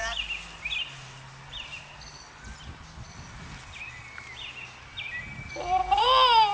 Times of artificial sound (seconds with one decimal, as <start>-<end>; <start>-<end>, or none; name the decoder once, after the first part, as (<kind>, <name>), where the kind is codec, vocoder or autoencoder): none